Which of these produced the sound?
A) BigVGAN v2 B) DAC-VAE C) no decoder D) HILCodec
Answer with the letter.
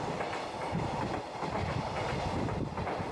A